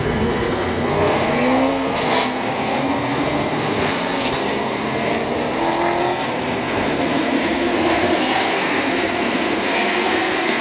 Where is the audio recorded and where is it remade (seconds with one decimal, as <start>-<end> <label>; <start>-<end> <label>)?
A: 0.0-5.1 remade; 5.1-6.0 recorded; 6.0-10.6 remade